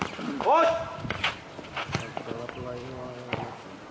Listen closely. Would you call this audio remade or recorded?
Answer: recorded